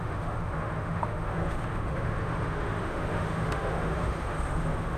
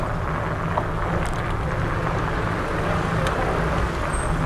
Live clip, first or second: second